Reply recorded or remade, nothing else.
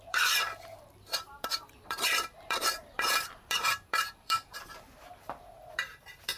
remade